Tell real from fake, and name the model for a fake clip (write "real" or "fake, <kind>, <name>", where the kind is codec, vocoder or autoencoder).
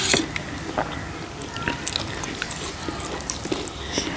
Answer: real